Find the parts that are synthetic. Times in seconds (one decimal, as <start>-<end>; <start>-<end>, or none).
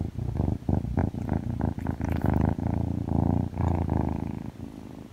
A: none